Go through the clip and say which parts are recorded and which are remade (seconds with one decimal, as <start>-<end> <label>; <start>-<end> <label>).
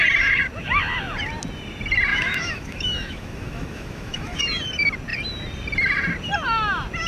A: 0.0-2.1 recorded; 2.1-4.6 remade; 4.6-7.1 recorded